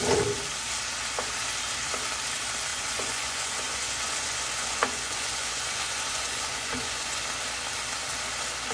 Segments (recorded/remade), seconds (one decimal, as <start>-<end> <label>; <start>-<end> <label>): 0.0-2.7 recorded; 2.7-7.2 remade; 7.2-8.7 recorded